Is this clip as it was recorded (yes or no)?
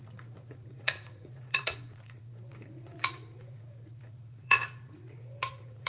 no